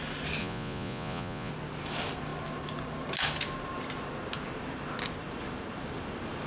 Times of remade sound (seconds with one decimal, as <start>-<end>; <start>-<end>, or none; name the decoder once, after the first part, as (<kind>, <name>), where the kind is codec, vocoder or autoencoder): 0.4-1.5 (vocoder, Vocos)